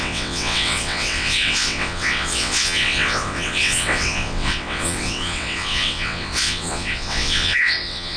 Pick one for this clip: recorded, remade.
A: remade